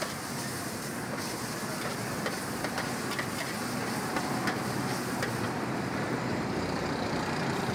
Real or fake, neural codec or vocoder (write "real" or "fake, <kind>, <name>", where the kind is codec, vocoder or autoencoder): fake, vocoder, BigVGAN v2